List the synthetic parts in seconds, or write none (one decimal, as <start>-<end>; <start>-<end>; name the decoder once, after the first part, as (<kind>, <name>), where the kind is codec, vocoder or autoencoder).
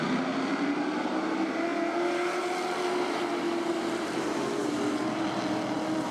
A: none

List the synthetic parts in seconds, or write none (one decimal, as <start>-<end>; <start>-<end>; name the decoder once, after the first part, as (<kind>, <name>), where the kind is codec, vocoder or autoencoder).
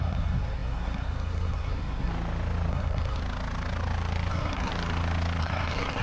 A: 0.0-2.1 (codec, SNAC); 2.7-3.2; 4.3-4.7; 5.4-6.0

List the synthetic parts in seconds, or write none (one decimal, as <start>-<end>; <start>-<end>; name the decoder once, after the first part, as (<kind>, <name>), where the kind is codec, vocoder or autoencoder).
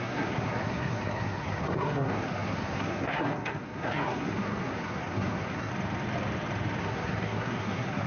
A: 0.0-5.7 (codec, SNAC); 6.8-8.1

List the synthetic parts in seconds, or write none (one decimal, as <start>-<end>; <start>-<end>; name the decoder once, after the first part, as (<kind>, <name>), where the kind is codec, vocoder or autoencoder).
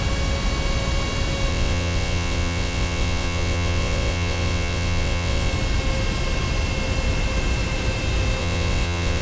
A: 1.5-5.5 (vocoder, WaveNeXt); 8.4-9.2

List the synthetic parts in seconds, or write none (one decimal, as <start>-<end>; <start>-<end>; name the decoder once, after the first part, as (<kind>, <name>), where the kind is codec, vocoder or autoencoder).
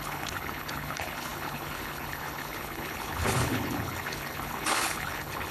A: 0.0-5.5 (codec, HILCodec)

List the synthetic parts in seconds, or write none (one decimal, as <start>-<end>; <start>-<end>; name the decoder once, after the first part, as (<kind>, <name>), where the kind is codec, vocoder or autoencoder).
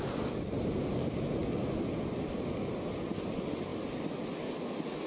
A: none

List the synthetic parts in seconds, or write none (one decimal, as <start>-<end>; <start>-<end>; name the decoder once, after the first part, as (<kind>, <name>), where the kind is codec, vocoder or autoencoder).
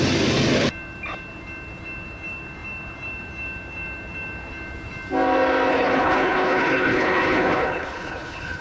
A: 5.7-8.6 (codec, HILCodec)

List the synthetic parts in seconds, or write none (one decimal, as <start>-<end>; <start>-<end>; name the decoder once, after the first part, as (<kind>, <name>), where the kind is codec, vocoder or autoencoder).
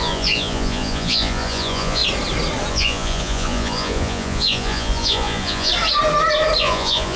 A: 0.0-2.0 (vocoder, Vocos); 2.7-5.7; 6.6-7.2